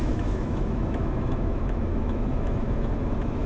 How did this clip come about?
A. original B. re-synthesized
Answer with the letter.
B